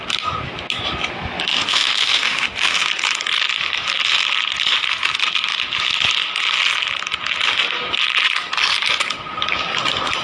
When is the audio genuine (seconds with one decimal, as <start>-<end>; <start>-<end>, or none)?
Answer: 0.0-1.5; 2.9-10.2

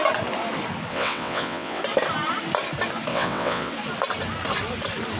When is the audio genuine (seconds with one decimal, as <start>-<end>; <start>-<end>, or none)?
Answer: 0.0-0.9; 1.8-3.1; 3.7-5.2

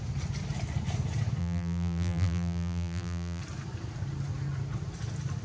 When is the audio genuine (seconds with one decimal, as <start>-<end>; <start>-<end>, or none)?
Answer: 0.0-1.4; 3.4-5.4

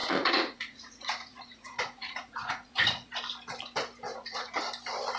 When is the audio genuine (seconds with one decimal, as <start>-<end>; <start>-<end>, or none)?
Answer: 3.1-4.1; 4.6-5.2

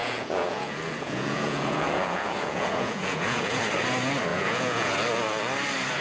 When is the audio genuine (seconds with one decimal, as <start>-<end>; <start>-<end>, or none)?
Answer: 3.6-4.3; 4.9-6.0

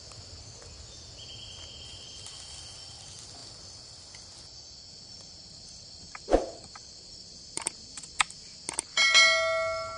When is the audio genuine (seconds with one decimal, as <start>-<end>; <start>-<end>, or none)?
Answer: 0.0-5.5; 7.6-10.0

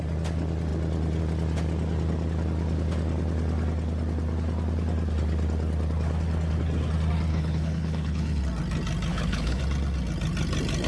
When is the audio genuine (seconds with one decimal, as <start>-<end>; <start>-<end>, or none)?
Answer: 0.0-7.3; 8.4-9.1; 9.6-10.9

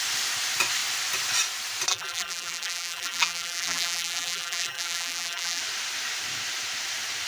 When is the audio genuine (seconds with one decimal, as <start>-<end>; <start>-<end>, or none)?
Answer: 0.0-1.9; 5.6-7.3